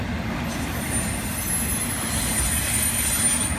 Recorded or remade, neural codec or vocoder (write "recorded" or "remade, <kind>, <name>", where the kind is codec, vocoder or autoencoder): recorded